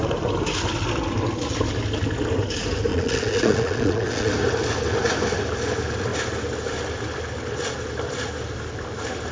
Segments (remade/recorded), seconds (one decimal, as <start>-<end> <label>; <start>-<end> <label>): 0.0-2.9 recorded; 2.9-4.3 remade; 4.3-9.3 recorded